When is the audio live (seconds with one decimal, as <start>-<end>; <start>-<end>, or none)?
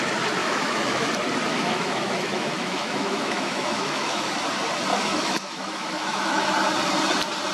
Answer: 0.0-0.4; 1.1-1.5; 4.3-4.9; 6.4-7.5